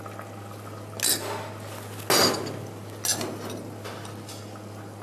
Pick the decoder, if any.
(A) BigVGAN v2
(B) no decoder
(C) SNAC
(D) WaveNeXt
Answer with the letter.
B